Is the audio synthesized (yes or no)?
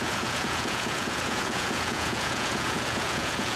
yes